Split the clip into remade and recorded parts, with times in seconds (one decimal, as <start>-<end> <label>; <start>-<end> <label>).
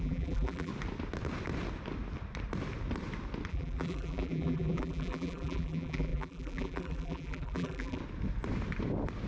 0.0-0.7 remade; 0.7-3.5 recorded; 3.5-8.0 remade; 8.0-9.3 recorded